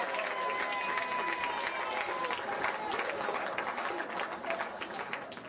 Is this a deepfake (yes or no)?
no